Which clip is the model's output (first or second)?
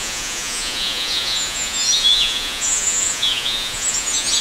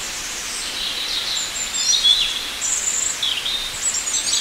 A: first